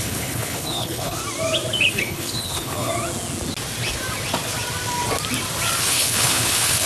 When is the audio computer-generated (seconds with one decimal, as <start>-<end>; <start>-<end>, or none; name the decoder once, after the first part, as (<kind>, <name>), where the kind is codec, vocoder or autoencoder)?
0.0-1.2 (codec, HILCodec); 1.9-2.9; 5.8-6.9

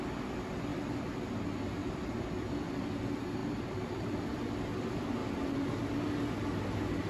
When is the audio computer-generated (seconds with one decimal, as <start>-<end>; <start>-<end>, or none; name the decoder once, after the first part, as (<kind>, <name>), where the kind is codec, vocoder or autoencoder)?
0.7-1.3 (vocoder, BigVGAN v2); 1.8-2.7; 3.4-4.5; 5.2-6.0

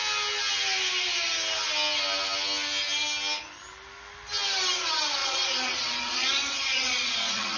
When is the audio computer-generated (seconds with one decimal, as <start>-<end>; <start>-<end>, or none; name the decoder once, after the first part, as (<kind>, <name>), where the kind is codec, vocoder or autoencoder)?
5.2-7.6 (vocoder, Vocos)

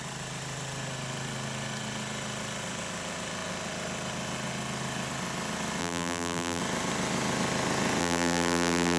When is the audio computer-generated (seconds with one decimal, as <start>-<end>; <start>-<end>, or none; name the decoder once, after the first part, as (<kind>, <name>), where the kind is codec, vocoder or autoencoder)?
5.8-6.6 (vocoder, BigVGAN v2); 8.0-9.0

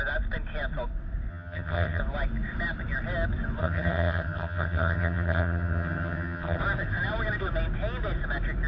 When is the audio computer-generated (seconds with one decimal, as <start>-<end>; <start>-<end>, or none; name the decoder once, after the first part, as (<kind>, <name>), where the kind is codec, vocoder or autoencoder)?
1.3-2.0 (vocoder, HiFi-GAN); 3.6-6.6

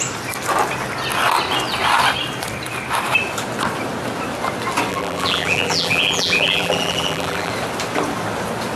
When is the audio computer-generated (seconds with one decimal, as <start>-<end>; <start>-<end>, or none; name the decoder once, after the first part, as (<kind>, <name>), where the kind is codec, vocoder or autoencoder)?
4.9-7.5 (vocoder, BigVGAN v2)